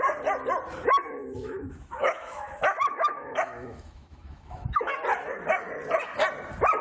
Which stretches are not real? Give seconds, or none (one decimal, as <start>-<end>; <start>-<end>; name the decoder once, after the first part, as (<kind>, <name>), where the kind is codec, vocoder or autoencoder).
1.2-4.9 (autoencoder, DAC-VAE)